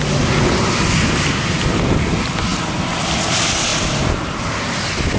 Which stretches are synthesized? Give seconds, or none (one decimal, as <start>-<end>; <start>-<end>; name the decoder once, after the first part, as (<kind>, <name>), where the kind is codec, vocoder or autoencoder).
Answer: none

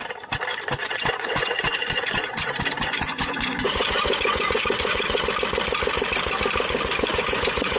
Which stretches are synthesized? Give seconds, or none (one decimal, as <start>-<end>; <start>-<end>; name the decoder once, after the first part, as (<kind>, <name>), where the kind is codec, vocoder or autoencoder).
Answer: 0.5-5.2 (vocoder, Vocos); 7.1-7.8

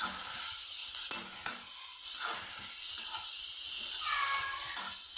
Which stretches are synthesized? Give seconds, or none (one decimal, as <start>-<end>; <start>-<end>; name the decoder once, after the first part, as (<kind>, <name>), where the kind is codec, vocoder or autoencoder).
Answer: none

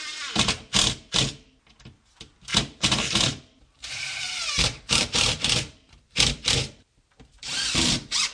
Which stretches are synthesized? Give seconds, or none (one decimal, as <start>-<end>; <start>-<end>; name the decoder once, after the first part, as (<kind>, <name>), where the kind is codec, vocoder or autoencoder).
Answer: 2.5-7.0 (vocoder, BigVGAN v2)

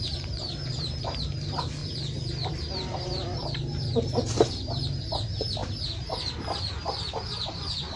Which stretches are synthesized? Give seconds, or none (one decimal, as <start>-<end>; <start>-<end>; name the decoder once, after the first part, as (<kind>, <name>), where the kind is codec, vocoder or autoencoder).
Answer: 0.0-1.8 (vocoder, BigVGAN v2); 2.5-5.6; 7.1-8.0

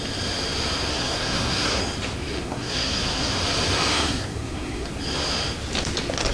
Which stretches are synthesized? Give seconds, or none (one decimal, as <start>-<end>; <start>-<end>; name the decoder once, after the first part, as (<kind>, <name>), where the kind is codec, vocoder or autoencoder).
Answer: 0.9-1.8 (codec, SNAC); 2.3-3.3; 3.9-4.9

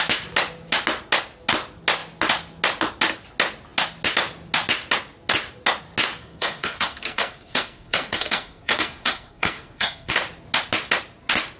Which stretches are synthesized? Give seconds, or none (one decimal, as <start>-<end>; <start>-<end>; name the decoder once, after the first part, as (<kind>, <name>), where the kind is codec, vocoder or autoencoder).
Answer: 6.2-10.1 (codec, SNAC)

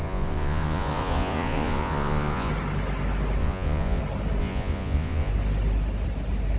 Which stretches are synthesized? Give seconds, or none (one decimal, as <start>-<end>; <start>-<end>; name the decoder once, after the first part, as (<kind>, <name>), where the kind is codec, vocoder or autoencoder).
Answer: 0.0-2.5 (vocoder, Vocos); 3.4-4.0; 4.4-5.3